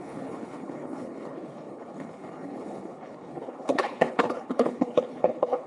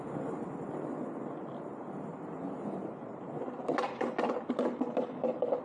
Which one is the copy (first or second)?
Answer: first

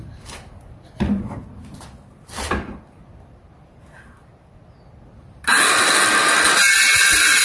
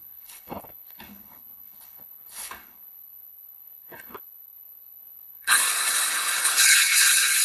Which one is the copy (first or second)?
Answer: second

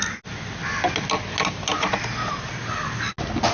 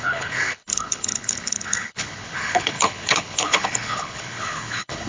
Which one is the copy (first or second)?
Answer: second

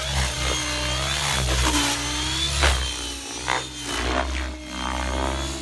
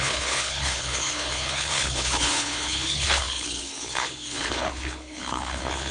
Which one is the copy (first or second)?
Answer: second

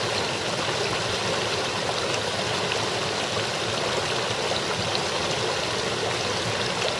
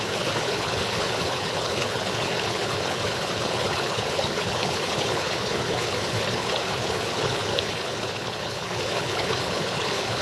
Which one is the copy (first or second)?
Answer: second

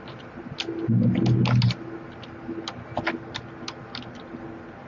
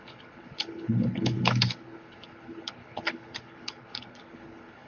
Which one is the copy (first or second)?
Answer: second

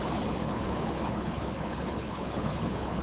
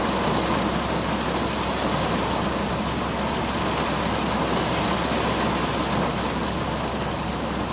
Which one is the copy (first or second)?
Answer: first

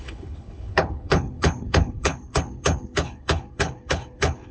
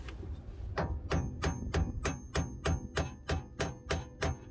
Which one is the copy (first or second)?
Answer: first